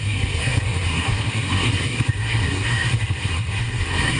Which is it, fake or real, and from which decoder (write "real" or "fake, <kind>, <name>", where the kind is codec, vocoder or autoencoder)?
fake, codec, SNAC